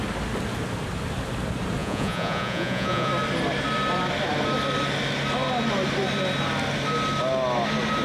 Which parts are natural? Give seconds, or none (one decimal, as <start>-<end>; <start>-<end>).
0.0-1.8; 3.1-8.0